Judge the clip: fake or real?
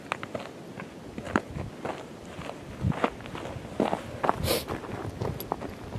real